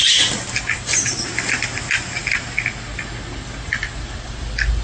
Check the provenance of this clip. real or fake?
real